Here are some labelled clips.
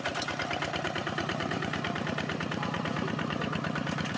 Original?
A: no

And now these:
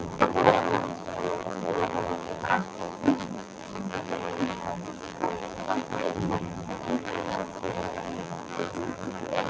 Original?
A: no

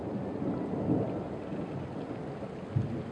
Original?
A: yes